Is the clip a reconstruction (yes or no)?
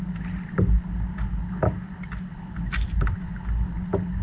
no